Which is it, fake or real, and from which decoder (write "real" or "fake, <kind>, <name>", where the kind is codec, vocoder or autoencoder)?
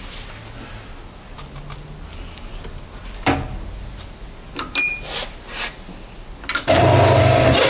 real